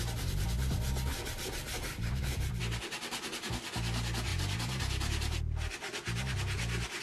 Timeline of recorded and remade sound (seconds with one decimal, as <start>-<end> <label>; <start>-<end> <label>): 0.0-1.1 recorded; 1.1-2.6 remade; 2.6-7.0 recorded